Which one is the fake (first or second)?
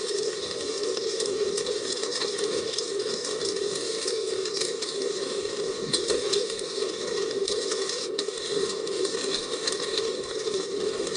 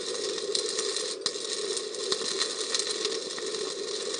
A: first